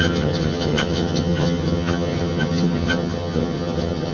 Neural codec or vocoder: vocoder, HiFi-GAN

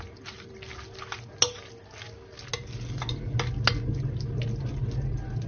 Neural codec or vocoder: none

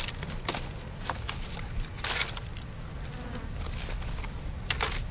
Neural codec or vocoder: none